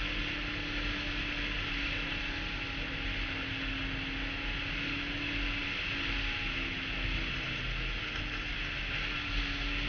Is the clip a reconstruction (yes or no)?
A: no